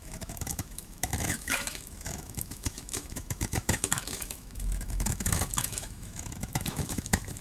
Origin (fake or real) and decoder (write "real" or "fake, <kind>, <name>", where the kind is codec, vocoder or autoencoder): fake, autoencoder, DAC-VAE